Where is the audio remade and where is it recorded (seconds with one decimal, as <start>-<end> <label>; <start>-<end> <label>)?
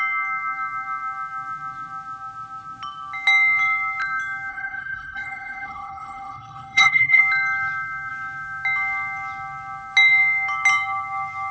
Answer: 0.0-4.5 recorded; 4.5-7.2 remade; 7.2-11.5 recorded